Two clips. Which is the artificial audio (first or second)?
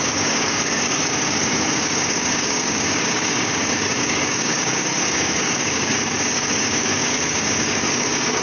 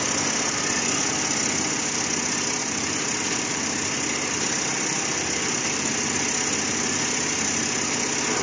first